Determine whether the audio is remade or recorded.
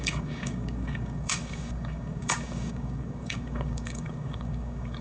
remade